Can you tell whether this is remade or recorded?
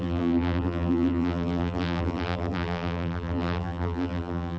remade